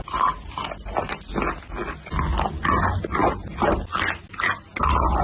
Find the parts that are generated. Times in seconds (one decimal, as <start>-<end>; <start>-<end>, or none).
none